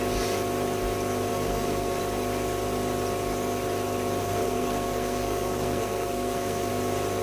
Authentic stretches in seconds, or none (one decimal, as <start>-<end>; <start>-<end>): 0.0-1.3; 2.0-4.2; 6.7-7.2